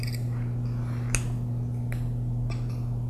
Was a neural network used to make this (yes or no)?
no